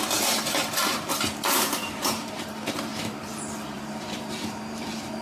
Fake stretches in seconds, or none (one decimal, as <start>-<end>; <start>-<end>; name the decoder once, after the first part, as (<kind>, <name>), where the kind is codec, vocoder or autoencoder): 0.0-0.6 (vocoder, BigVGAN v2); 1.5-5.2